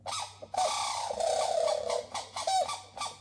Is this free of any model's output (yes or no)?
yes